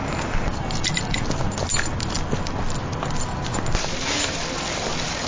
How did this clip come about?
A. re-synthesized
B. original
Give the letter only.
B